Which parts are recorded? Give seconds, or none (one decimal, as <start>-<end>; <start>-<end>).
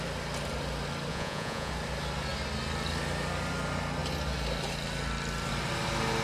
0.0-1.1; 1.7-6.2